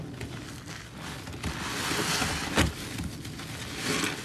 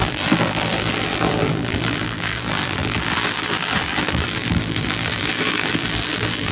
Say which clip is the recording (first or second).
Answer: first